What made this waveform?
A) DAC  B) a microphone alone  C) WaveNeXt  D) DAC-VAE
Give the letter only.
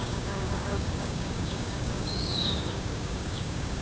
A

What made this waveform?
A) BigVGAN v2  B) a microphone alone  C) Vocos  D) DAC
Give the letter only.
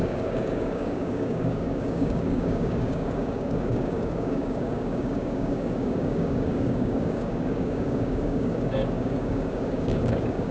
D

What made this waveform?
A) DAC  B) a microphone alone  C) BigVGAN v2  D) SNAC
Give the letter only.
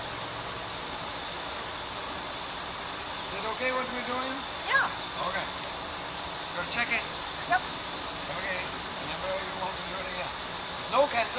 B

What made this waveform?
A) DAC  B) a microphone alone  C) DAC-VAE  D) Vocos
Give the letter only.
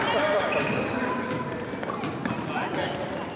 B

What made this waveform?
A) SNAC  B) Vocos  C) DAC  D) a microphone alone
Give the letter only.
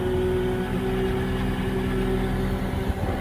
D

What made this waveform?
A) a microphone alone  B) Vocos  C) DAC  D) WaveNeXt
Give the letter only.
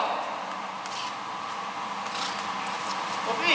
A